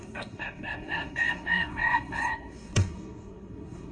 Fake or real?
fake